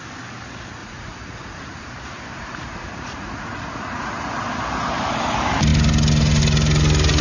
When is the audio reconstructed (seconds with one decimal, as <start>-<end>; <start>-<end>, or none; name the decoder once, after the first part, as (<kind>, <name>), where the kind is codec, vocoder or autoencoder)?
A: 0.8-1.9 (vocoder, Vocos); 2.3-4.3